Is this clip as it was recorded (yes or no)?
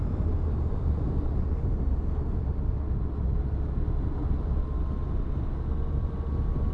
yes